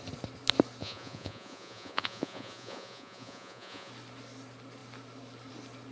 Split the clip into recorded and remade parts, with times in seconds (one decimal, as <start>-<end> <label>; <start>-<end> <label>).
0.0-0.8 recorded; 0.8-3.9 remade; 3.9-5.9 recorded